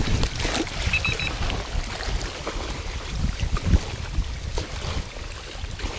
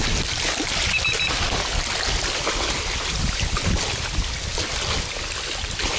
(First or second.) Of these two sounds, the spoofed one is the first